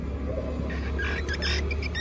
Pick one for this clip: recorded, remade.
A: recorded